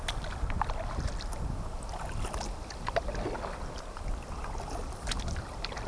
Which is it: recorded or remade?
recorded